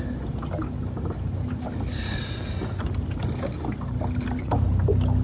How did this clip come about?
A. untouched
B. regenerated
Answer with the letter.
A